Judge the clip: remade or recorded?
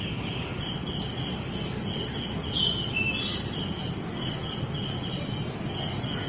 recorded